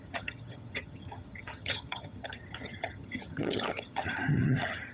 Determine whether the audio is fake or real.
fake